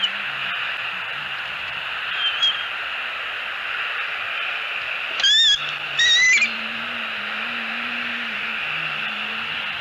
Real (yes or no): yes